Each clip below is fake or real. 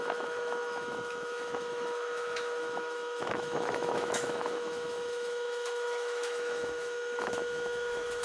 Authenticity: fake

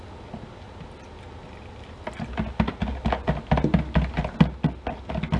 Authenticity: real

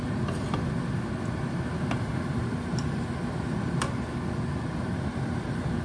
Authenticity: real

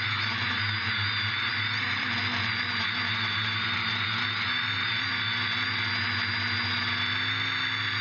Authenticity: real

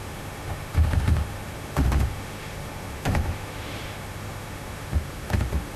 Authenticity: fake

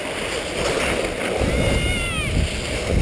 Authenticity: real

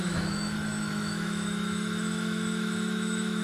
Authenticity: fake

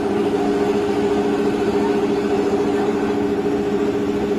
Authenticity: real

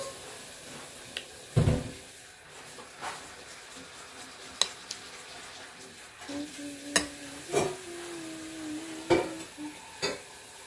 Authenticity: real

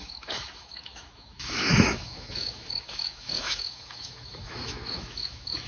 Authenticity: fake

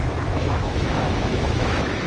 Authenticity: fake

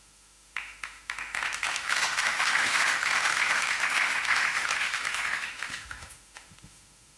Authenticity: fake